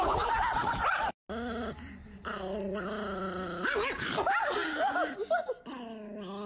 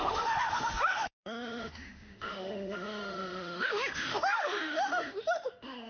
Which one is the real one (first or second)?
first